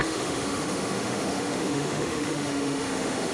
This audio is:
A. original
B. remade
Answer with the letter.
B